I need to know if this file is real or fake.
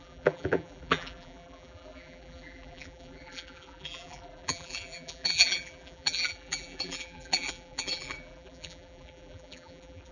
fake